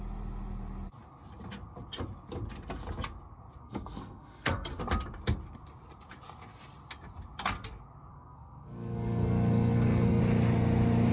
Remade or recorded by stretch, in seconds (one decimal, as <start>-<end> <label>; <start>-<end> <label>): 0.0-3.6 recorded; 3.6-4.8 remade; 4.8-8.1 recorded; 8.1-10.2 remade; 10.2-11.1 recorded